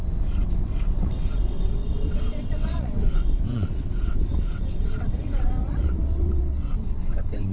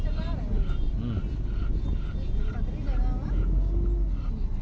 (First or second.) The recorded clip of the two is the second